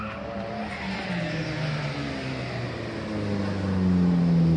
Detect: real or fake real